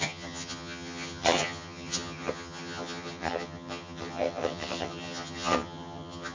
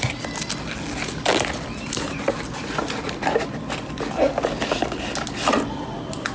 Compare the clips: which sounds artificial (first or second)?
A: first